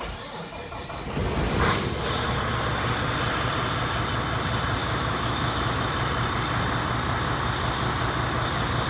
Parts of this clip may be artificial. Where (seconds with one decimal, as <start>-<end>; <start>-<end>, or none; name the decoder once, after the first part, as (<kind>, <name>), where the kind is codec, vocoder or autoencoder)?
4.8-6.0 (autoencoder, DAC-VAE)